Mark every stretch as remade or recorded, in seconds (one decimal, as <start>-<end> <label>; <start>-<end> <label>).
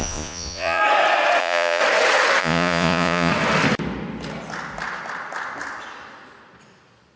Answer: 0.0-0.8 remade; 0.8-1.4 recorded; 1.4-1.8 remade; 1.8-2.4 recorded; 2.4-3.3 remade; 3.3-7.2 recorded